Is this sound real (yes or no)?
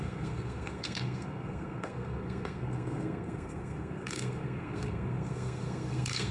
no